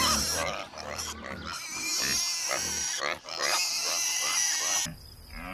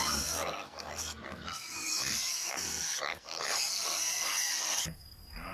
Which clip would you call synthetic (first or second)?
second